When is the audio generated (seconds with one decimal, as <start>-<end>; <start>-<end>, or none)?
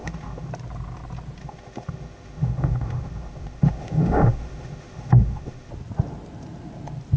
0.0-0.5; 1.4-5.7